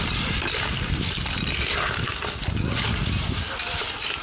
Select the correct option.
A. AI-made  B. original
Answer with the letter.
B